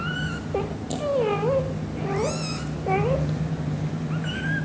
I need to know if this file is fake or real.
real